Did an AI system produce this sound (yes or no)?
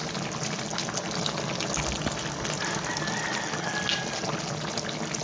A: no